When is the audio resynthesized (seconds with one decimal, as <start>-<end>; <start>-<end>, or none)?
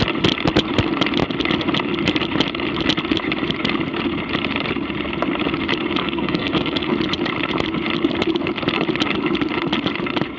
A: 6.0-6.9